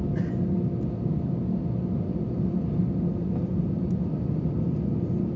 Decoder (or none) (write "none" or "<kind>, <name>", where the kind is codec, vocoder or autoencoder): none